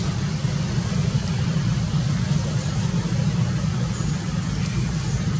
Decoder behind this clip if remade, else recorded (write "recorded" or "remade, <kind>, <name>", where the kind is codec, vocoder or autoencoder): recorded